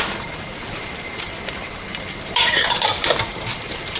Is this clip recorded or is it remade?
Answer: remade